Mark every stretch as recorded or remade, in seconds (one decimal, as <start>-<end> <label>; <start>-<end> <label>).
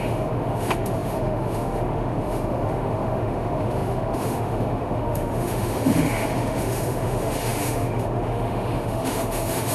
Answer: 0.0-9.7 remade